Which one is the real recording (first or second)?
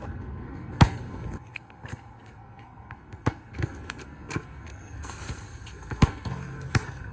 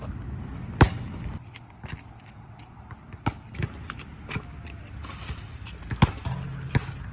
second